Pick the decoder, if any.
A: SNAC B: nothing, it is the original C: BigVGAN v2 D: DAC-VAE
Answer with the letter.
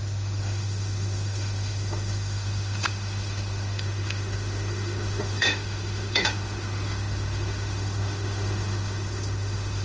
D